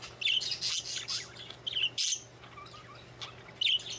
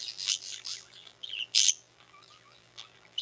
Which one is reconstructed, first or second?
second